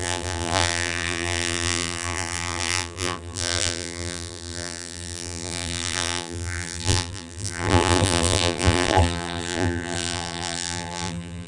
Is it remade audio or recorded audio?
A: remade